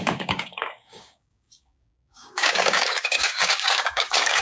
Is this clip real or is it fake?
fake